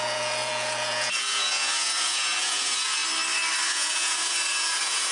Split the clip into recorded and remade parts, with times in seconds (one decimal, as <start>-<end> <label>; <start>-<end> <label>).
0.0-3.0 remade; 3.0-3.7 recorded; 3.7-5.1 remade